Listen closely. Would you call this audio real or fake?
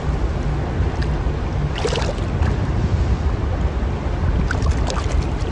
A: real